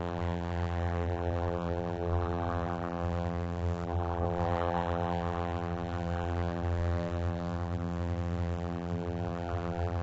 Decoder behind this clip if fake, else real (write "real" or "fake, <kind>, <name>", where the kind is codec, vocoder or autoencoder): fake, vocoder, BigVGAN v2